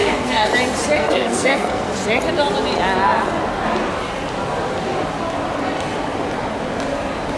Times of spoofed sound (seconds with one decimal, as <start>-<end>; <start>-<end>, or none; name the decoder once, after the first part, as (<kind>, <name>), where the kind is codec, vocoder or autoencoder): 0.0-0.5 (codec, SNAC); 1.0-1.9